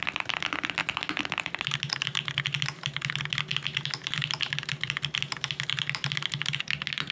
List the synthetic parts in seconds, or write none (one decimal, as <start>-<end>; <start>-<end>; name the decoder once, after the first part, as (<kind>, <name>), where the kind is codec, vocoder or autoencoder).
none